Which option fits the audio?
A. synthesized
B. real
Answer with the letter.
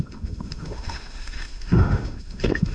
A